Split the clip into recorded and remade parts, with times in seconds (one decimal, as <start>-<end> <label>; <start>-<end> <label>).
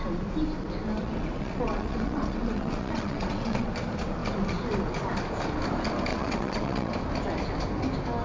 0.0-1.0 recorded; 1.0-3.7 remade; 3.7-6.1 recorded; 6.1-6.9 remade; 6.9-8.2 recorded